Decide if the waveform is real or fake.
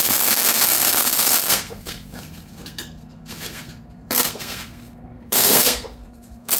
fake